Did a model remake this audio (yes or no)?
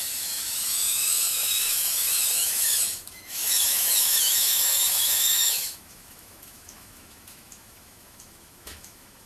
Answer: yes